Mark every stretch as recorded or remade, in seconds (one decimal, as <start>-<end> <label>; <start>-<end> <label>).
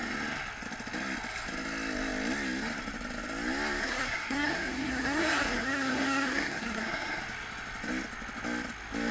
0.0-3.8 recorded; 3.8-7.2 remade; 7.2-9.1 recorded